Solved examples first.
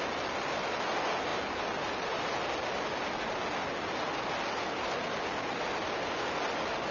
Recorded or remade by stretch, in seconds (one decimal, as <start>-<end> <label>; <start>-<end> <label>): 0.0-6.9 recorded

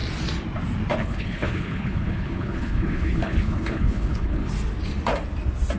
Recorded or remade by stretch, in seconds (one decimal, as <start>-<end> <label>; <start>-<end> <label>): 0.0-1.0 recorded; 1.0-4.5 remade; 4.5-5.8 recorded

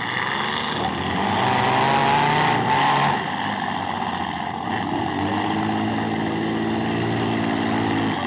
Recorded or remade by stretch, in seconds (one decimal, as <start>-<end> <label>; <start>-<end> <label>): 0.0-8.3 recorded

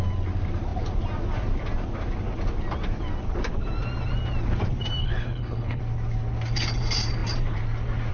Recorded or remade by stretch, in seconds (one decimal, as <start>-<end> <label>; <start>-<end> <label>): 0.0-5.0 recorded; 5.0-5.8 remade; 5.8-8.1 recorded